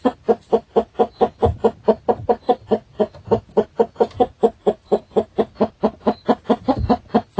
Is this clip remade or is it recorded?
recorded